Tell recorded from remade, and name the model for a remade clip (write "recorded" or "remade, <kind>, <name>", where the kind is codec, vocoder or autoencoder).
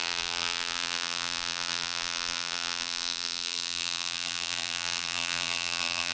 remade, vocoder, BigVGAN v2